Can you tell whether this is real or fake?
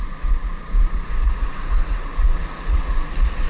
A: fake